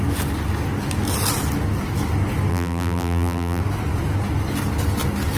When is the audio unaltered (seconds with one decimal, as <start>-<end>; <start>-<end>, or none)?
0.0-2.5; 3.6-5.4